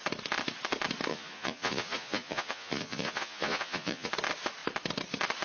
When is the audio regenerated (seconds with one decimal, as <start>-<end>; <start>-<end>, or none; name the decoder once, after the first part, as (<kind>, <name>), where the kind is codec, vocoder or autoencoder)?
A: 1.1-4.1 (vocoder, Vocos)